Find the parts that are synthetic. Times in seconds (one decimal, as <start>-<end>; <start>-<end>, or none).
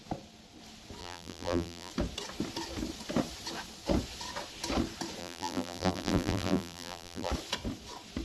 1.0-1.9; 5.2-7.3